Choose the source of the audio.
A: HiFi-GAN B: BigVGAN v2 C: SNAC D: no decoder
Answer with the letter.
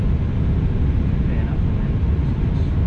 B